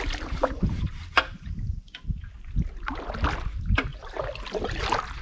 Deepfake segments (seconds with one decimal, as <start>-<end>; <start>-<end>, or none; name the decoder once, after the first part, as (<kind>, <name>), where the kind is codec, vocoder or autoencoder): 0.0-1.7 (vocoder, BigVGAN v2); 4.8-5.2